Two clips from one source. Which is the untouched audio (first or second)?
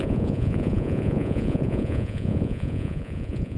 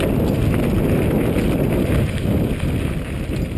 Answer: second